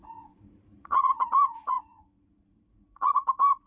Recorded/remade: remade